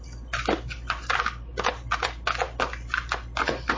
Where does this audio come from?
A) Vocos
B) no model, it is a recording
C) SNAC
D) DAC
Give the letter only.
B